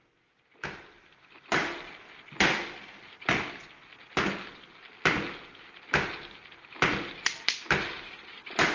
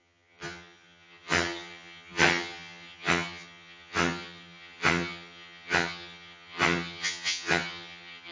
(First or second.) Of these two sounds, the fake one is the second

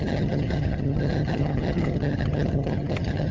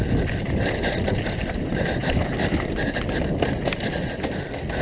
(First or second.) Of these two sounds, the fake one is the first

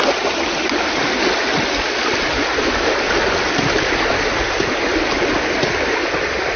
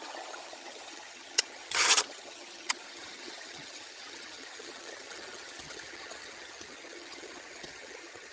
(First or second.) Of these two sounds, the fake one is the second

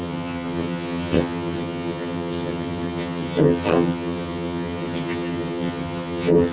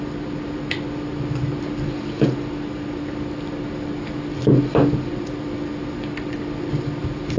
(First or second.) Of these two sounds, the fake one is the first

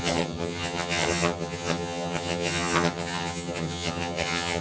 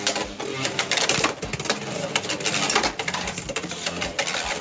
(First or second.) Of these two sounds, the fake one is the first